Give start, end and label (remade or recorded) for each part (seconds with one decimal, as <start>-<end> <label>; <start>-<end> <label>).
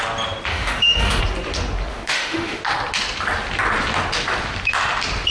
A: 0.0-0.5 recorded; 0.5-1.2 remade; 1.2-1.9 recorded; 1.9-2.6 remade; 2.6-5.3 recorded